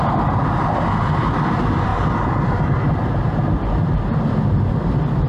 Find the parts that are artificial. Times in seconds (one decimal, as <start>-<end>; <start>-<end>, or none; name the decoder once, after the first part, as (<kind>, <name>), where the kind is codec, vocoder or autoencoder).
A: none